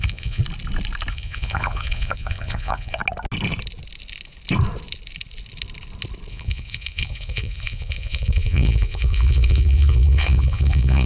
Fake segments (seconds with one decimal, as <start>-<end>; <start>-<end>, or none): 0.0-0.4; 1.1-3.0; 6.3-11.1